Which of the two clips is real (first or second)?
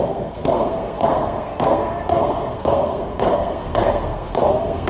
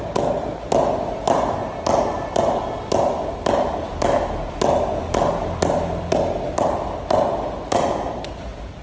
second